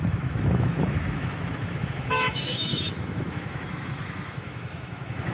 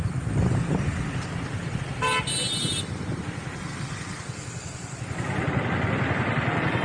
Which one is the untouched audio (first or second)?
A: second